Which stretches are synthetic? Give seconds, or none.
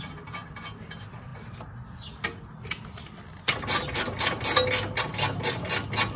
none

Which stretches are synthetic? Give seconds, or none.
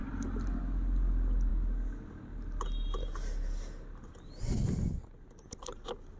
none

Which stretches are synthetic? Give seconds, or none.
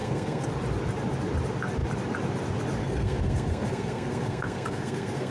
0.0-0.5 (codec, SNAC); 2.8-5.3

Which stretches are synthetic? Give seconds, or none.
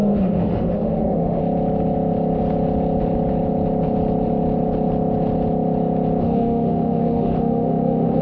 0.0-1.4 (autoencoder, DAC-VAE); 6.2-8.2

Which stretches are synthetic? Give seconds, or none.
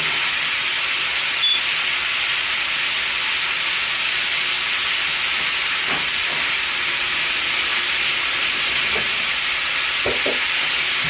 none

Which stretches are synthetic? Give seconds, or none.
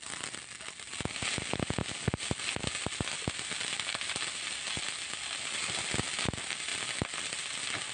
none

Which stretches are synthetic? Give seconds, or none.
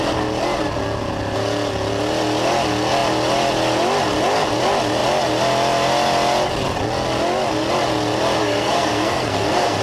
8.4-9.8 (codec, SNAC)